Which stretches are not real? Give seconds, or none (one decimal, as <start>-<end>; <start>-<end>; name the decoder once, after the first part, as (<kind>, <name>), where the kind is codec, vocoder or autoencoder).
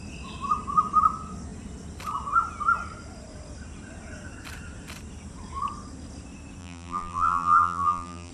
6.6-8.3 (vocoder, BigVGAN v2)